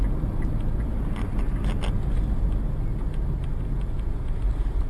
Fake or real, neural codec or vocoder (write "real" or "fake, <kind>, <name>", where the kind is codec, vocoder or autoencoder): real